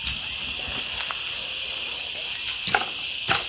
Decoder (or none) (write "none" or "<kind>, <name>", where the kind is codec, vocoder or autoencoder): none